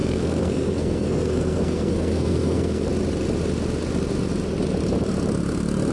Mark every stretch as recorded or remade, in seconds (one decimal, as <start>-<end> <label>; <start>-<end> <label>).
0.0-2.9 remade; 2.9-5.9 recorded